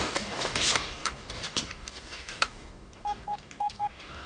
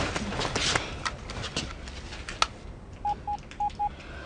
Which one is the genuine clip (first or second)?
second